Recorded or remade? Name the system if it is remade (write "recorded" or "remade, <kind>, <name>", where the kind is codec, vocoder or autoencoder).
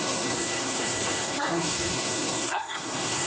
remade, codec, SNAC